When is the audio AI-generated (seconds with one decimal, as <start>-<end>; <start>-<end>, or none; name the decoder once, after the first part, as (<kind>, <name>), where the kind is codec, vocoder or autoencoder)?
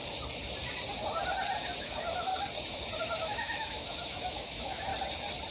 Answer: 1.8-2.3 (autoencoder, DAC-VAE); 3.0-4.9